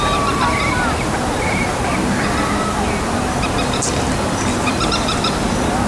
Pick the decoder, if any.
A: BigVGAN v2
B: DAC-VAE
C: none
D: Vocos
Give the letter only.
C